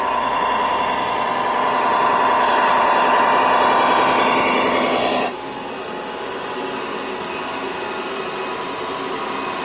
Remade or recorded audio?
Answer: recorded